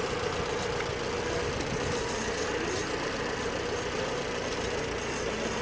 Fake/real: real